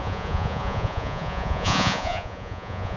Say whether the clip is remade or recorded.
remade